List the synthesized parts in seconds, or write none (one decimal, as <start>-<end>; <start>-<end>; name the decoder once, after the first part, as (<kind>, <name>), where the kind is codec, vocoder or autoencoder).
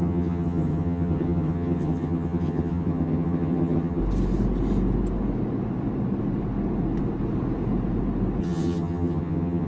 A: 0.0-4.0 (vocoder, HiFi-GAN); 8.4-9.7